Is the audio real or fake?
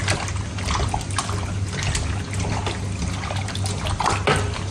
real